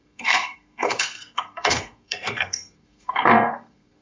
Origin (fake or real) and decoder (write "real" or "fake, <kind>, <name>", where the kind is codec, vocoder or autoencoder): fake, codec, SNAC